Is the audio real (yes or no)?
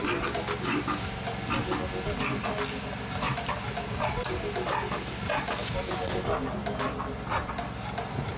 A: yes